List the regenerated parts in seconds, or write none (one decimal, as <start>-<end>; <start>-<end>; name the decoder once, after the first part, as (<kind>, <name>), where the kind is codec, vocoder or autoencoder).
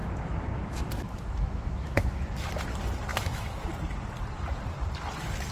0.0-2.5 (autoencoder, DAC-VAE); 3.1-3.7